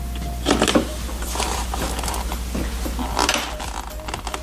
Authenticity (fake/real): real